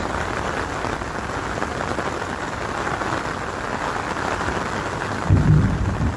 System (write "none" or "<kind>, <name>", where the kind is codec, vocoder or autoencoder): none